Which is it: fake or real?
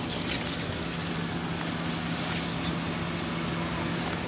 real